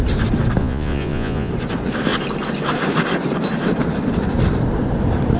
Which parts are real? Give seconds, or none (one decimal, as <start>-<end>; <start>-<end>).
0.0-0.6; 1.5-5.4